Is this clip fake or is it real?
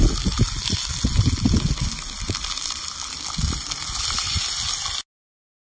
real